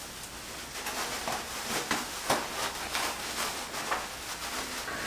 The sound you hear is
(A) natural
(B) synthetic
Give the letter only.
A